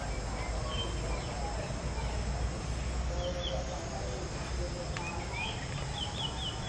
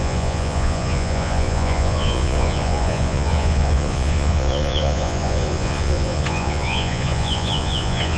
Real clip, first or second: first